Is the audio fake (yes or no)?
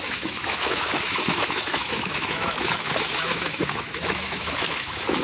yes